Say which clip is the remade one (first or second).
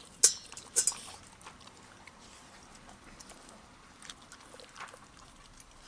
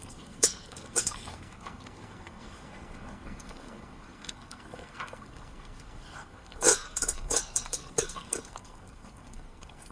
second